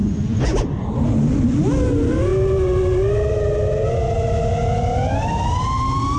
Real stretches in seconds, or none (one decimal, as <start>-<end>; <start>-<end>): 0.9-6.2